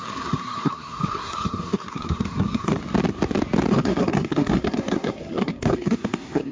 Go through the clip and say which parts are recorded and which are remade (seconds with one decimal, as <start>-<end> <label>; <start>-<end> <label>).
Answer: 0.0-2.8 remade; 2.8-3.7 recorded; 3.7-6.5 remade